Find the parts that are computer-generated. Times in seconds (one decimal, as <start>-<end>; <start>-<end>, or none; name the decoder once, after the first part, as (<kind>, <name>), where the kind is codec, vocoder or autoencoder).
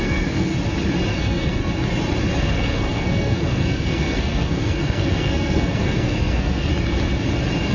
0.0-0.5 (codec, SNAC); 1.2-1.6; 2.4-6.7